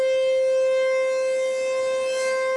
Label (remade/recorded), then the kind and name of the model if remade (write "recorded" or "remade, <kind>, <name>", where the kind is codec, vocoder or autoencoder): recorded